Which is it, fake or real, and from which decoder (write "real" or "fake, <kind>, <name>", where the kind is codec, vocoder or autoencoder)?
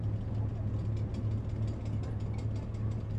real